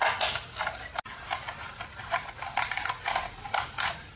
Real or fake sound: real